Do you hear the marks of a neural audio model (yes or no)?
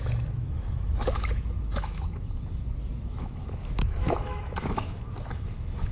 yes